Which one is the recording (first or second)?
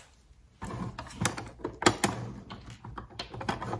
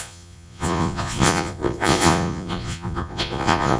first